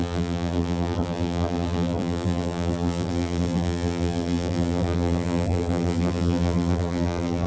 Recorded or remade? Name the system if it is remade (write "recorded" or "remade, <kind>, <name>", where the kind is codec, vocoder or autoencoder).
remade, vocoder, BigVGAN v2